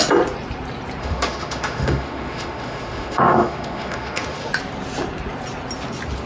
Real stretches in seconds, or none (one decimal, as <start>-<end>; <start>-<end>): 0.0-1.0; 4.5-6.3